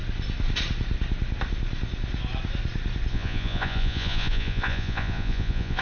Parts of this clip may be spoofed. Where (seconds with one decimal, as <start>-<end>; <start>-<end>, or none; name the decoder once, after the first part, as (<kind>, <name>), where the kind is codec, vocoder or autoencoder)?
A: 3.1-5.8 (vocoder, Vocos)